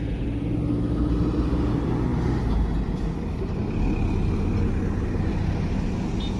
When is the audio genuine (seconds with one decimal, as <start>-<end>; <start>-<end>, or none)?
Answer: 0.0-6.4

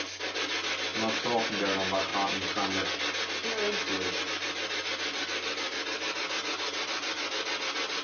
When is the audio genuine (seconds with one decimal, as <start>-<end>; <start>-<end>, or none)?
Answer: 0.0-8.0